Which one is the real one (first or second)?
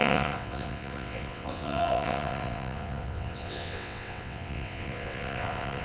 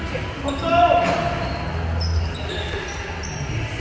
second